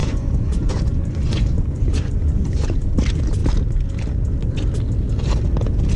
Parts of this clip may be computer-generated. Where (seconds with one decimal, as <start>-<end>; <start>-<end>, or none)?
0.0-2.9